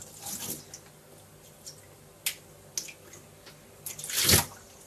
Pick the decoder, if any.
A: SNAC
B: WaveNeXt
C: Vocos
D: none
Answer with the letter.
D